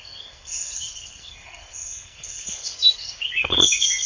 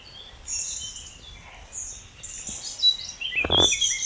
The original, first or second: second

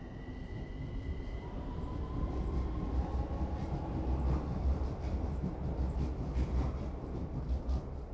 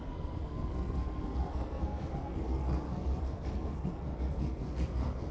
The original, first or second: first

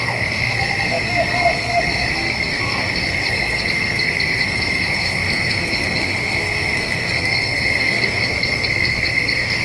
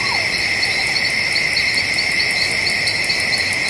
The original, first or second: second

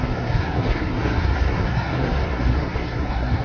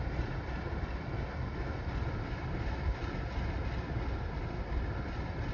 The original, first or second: second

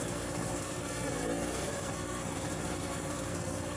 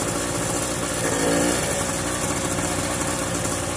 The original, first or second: second